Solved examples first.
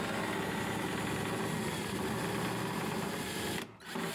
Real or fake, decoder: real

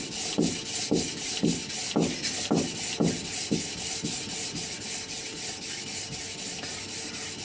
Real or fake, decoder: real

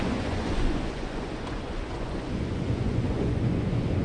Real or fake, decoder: fake, vocoder, Vocos